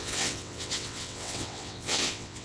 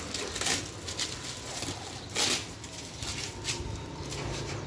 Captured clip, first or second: second